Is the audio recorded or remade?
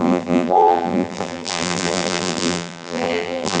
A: remade